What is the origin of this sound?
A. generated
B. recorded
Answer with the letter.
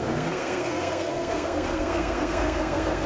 A